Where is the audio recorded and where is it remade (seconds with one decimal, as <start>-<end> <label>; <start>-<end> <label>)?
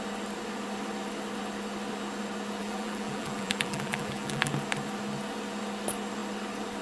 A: 0.0-2.6 recorded; 2.6-4.5 remade; 4.5-6.8 recorded